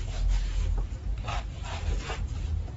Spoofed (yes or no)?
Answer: no